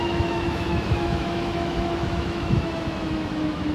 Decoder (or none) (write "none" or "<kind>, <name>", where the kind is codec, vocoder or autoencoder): autoencoder, DAC-VAE